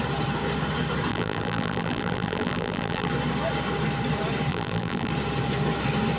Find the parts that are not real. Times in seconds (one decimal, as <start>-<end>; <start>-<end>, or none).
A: 1.1-3.1; 4.5-5.1